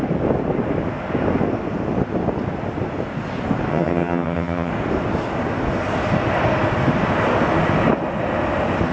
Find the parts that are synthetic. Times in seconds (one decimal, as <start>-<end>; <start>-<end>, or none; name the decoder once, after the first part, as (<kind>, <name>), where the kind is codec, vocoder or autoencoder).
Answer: 3.7-4.7 (vocoder, HiFi-GAN)